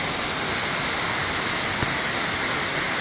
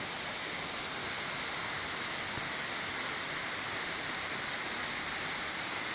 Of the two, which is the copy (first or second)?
first